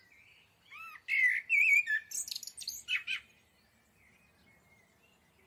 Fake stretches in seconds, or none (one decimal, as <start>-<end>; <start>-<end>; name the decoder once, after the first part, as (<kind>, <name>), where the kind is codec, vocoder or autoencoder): 3.0-4.9 (vocoder, BigVGAN v2)